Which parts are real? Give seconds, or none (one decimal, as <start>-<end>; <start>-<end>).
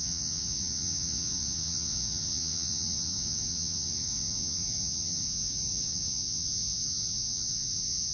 none